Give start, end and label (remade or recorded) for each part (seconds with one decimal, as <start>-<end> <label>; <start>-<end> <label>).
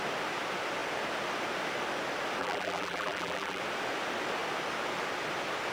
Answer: 0.0-2.4 recorded; 2.4-3.6 remade; 3.6-5.7 recorded